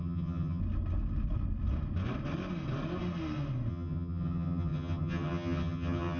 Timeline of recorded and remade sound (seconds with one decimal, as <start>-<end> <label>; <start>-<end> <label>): 0.0-0.6 remade; 0.6-3.7 recorded; 3.7-6.2 remade